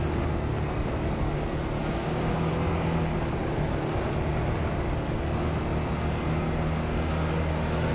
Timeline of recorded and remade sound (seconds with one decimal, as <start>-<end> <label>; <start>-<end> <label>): 0.0-1.8 recorded; 1.8-2.5 remade; 2.5-7.9 recorded